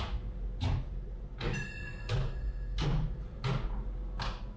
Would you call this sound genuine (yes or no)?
yes